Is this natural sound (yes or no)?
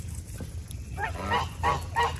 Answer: yes